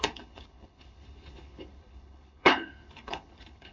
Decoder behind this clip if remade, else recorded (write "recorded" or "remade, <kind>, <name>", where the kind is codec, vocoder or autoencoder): remade, codec, HILCodec